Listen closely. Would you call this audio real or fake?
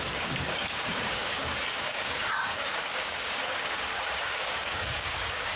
fake